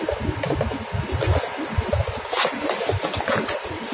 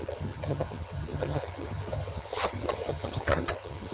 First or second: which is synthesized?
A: second